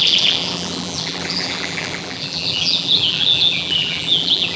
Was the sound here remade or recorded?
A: remade